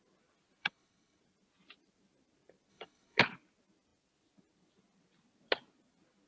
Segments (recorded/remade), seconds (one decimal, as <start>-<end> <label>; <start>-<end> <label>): 0.0-0.6 recorded; 0.6-1.2 remade; 1.2-2.7 recorded; 2.7-3.2 remade; 3.2-6.3 recorded